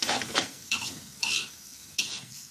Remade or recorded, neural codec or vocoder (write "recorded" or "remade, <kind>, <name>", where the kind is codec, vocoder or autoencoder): remade, codec, SNAC